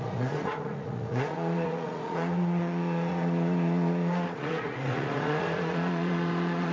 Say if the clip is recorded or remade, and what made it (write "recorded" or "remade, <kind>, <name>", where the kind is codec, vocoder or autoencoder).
remade, vocoder, Vocos